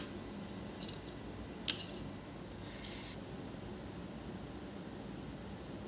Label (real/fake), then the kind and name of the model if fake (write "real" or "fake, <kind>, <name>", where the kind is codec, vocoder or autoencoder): real